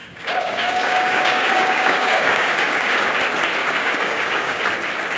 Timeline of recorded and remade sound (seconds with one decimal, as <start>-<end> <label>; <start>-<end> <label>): 0.0-3.1 remade; 3.1-3.6 recorded; 3.6-4.6 remade; 4.6-5.2 recorded